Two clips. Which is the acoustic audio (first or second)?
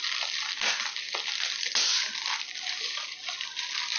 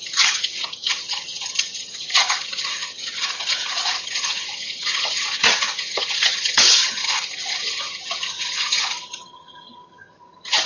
first